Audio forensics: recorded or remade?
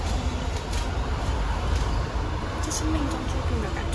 recorded